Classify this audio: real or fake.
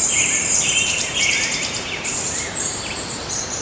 fake